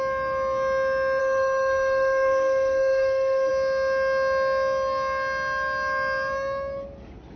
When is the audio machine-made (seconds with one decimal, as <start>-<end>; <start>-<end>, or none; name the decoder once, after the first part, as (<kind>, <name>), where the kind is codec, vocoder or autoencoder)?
1.2-3.5 (codec, SNAC)